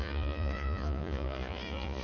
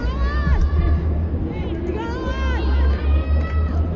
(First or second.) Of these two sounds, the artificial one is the first